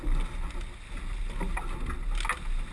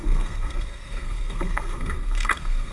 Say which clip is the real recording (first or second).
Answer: first